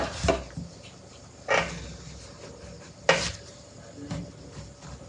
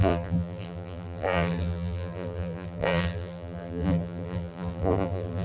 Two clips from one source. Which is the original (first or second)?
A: first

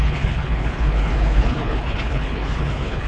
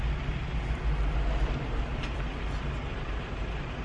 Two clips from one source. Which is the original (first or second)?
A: second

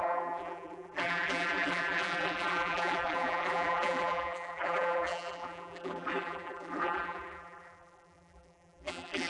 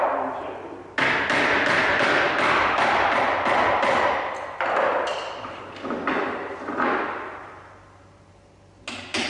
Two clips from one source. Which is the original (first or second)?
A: second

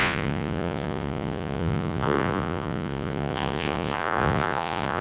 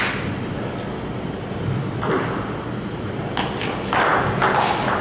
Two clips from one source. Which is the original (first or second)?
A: second